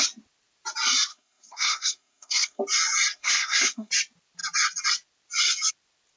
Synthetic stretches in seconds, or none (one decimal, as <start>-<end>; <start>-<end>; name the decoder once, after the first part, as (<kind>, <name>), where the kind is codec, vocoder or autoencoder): 1.1-2.6 (codec, SNAC); 3.1-3.9